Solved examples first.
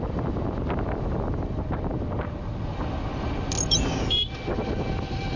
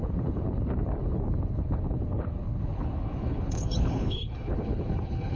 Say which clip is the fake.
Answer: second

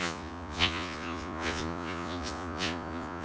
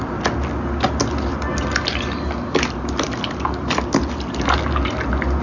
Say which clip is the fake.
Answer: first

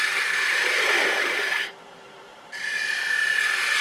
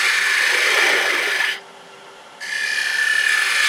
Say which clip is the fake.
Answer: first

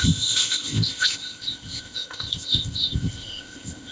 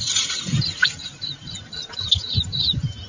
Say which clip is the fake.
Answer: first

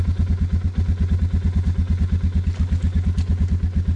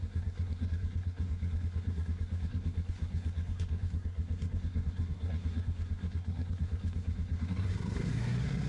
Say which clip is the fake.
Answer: second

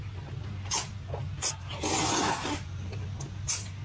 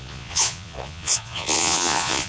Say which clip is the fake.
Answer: second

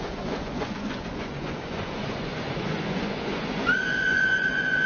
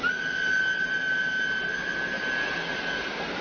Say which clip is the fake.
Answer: first